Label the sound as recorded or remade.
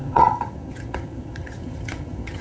remade